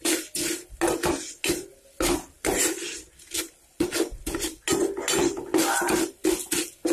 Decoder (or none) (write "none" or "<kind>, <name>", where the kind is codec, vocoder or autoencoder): none